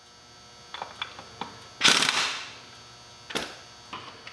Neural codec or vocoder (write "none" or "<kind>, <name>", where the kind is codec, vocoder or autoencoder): none